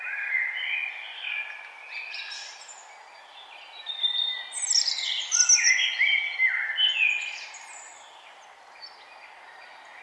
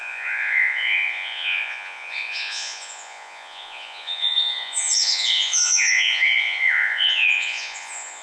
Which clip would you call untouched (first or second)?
first